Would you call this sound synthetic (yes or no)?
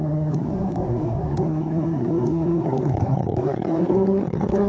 yes